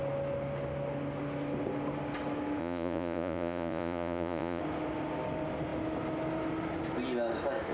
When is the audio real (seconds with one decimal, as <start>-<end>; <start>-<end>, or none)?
0.0-2.6; 4.6-7.7